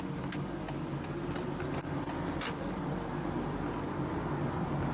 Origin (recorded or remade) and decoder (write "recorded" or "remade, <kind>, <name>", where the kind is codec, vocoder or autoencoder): recorded